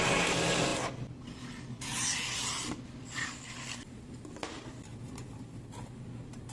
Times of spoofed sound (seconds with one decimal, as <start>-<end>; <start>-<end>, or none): none

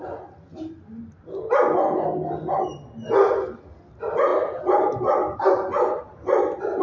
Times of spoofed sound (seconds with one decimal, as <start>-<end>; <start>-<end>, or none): none

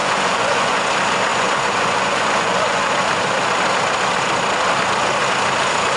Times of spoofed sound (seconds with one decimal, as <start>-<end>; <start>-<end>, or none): 0.0-0.9; 1.3-2.9